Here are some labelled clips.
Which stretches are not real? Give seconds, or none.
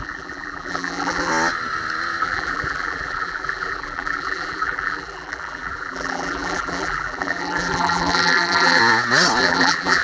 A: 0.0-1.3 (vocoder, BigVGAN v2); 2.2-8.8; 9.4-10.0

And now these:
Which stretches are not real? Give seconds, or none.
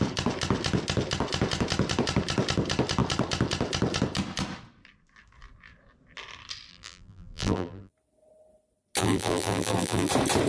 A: 6.7-7.9 (vocoder, BigVGAN v2); 9.0-10.1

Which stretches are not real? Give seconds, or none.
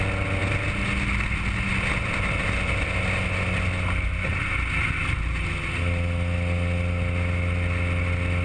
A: none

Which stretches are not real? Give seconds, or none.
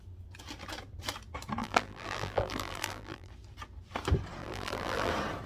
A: 1.6-3.3 (vocoder, BigVGAN v2); 4.4-5.1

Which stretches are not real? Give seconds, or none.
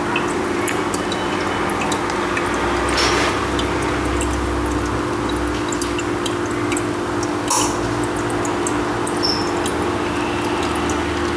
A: none